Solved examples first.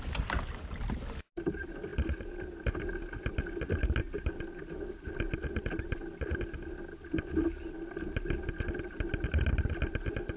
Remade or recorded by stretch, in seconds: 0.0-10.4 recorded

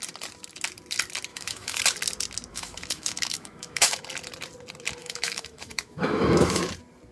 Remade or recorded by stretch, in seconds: 0.0-1.3 recorded; 1.3-1.8 remade; 1.8-2.5 recorded; 2.5-4.0 remade; 4.0-5.0 recorded; 5.0-6.6 remade; 6.6-7.1 recorded